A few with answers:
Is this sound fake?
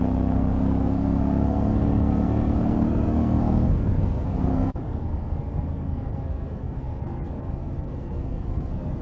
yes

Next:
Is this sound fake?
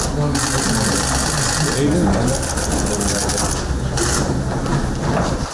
no